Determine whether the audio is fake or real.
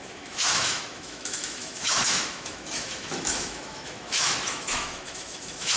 fake